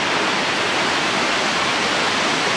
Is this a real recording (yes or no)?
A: yes